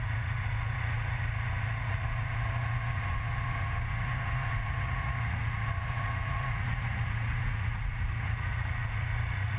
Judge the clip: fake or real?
fake